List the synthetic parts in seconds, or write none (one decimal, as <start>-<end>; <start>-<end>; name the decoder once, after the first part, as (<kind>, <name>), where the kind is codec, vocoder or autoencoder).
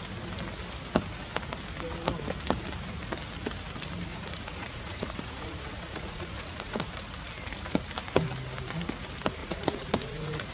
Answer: 4.1-7.0 (vocoder, Vocos); 9.4-10.5